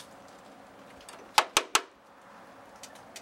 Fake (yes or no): no